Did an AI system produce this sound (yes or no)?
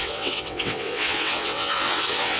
yes